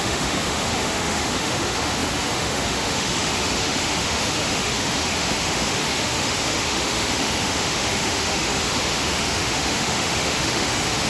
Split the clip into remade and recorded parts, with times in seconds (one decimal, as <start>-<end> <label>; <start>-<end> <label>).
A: 0.0-11.1 remade